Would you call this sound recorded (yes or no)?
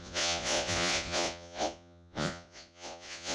no